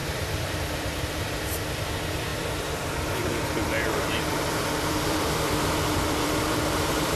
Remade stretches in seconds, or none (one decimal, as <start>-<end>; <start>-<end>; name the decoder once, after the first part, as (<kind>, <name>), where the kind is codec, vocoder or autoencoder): 0.0-1.2 (vocoder, BigVGAN v2); 2.3-6.6